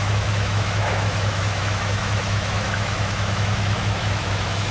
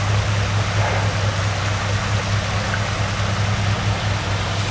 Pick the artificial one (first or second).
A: first